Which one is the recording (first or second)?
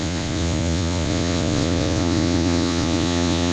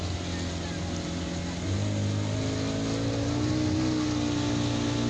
second